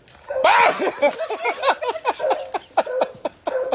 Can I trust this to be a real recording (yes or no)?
yes